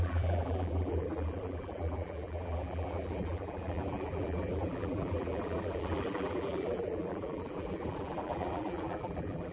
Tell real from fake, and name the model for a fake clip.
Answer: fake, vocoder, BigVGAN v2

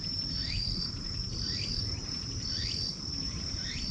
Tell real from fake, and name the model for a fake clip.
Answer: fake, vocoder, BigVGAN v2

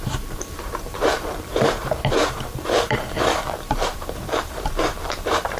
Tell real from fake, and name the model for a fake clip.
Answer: fake, vocoder, BigVGAN v2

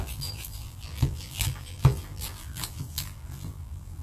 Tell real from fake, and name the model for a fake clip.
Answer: fake, vocoder, BigVGAN v2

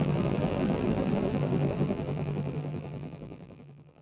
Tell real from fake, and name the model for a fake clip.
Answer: fake, vocoder, BigVGAN v2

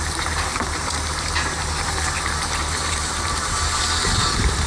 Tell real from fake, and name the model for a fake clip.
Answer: fake, vocoder, BigVGAN v2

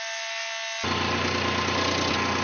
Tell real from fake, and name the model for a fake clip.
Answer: real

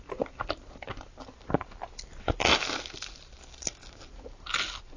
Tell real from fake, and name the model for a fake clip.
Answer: real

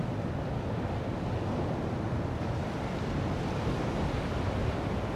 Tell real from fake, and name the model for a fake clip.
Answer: real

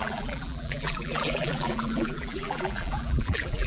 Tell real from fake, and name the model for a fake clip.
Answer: fake, vocoder, BigVGAN v2